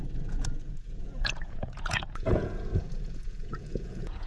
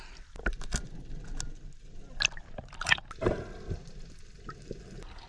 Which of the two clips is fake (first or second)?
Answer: first